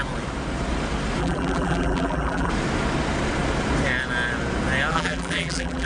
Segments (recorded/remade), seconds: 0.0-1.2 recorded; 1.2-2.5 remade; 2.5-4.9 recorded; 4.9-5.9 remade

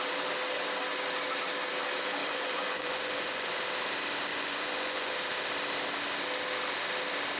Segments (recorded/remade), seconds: 0.0-2.2 recorded; 2.2-3.5 remade; 3.5-4.3 recorded; 4.3-5.1 remade; 5.1-7.4 recorded

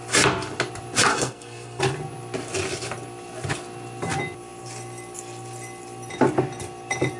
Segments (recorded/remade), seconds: 0.0-1.1 recorded; 1.1-1.8 remade; 1.8-7.2 recorded